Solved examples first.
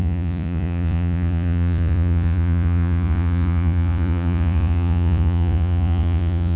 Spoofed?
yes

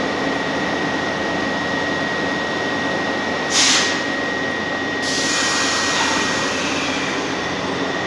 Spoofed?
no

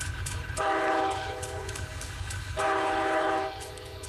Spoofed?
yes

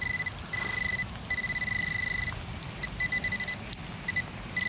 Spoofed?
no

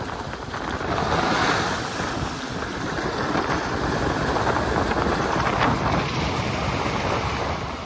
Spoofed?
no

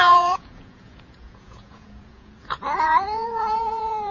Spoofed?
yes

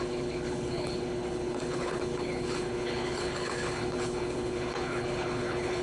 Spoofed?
yes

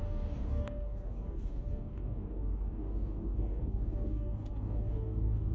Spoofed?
yes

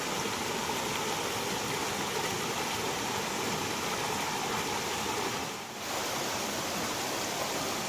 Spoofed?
no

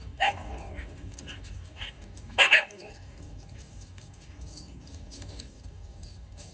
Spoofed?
yes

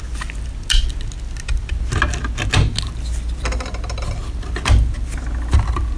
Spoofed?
no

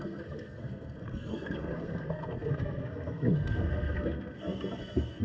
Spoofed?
yes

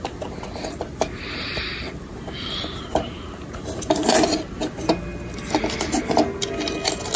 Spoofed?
no